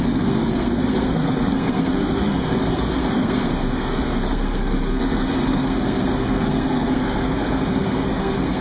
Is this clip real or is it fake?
fake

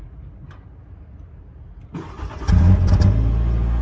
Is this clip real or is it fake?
real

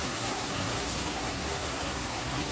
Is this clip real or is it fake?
fake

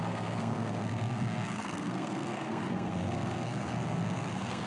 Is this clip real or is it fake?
fake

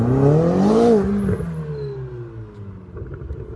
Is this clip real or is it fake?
real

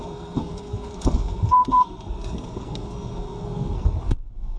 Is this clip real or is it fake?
fake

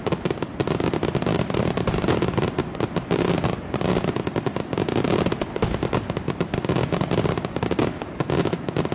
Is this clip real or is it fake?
real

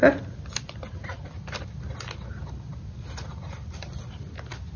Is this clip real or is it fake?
real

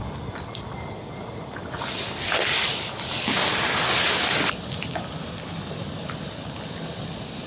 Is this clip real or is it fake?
real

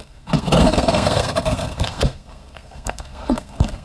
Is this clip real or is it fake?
fake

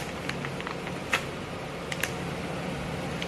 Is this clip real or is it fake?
real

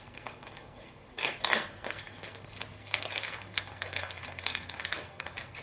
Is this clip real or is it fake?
fake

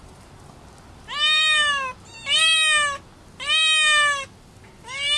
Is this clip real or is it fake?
real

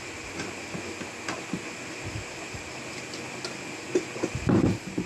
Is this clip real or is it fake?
real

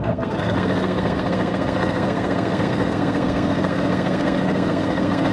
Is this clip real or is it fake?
fake